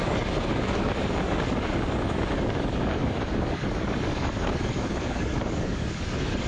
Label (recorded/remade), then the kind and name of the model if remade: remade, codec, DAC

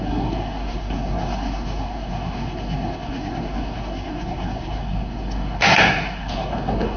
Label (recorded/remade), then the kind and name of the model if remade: remade, codec, SNAC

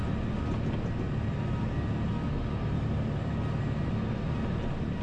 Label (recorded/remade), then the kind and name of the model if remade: recorded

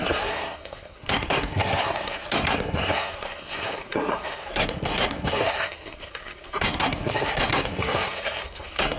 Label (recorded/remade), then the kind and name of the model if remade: remade, codec, SNAC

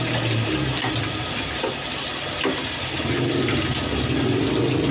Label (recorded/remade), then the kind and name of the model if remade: recorded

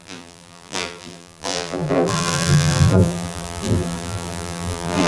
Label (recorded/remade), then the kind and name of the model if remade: remade, vocoder, BigVGAN v2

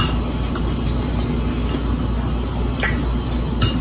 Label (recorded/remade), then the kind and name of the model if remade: recorded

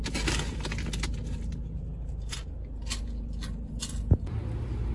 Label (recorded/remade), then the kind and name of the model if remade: recorded